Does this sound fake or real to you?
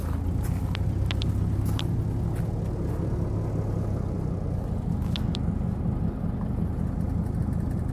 real